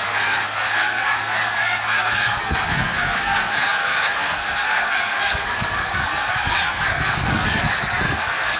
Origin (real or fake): fake